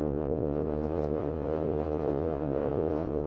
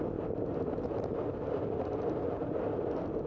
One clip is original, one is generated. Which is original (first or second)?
second